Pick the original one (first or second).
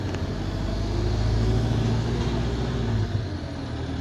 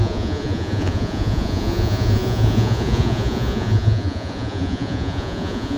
first